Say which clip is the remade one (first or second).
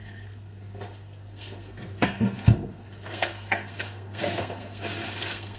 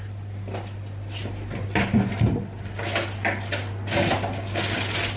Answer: first